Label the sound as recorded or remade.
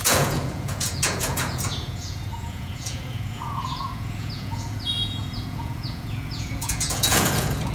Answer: remade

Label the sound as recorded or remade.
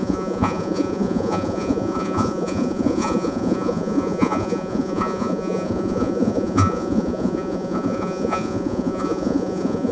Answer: remade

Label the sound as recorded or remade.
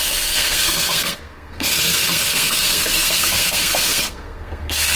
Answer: remade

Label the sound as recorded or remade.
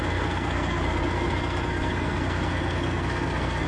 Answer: remade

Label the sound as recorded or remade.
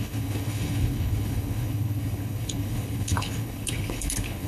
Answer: remade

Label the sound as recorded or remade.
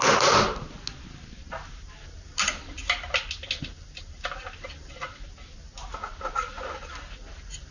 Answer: recorded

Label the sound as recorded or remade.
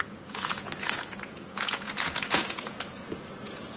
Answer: remade